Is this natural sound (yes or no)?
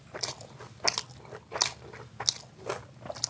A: yes